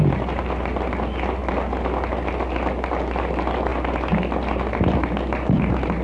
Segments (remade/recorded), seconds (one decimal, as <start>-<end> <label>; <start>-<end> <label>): 0.0-6.0 recorded